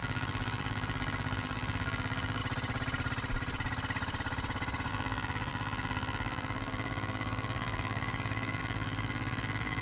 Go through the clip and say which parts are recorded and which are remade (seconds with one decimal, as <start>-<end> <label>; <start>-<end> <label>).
0.0-2.4 remade; 2.4-4.9 recorded; 4.9-9.8 remade